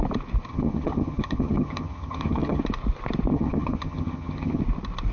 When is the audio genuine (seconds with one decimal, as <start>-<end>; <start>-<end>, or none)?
0.0-0.5; 2.6-3.3; 4.6-5.1